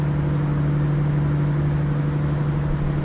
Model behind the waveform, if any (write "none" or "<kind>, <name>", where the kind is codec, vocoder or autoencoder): none